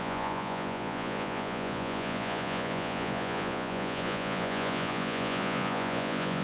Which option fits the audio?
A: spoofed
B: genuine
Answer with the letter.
A